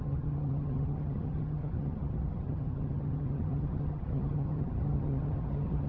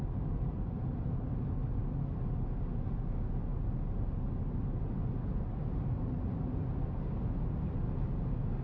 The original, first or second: second